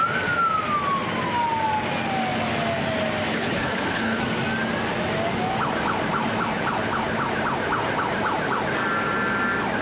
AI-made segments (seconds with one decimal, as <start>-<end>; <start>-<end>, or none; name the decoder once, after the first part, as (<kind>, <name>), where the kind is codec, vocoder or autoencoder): 3.3-4.2 (codec, HILCodec)